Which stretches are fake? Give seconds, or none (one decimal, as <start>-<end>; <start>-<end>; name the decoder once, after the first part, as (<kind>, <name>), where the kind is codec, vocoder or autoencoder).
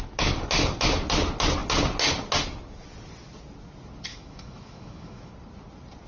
4.1-5.3 (autoencoder, DAC-VAE)